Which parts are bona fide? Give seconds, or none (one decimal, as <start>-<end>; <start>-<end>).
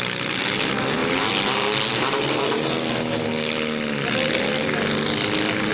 0.0-5.7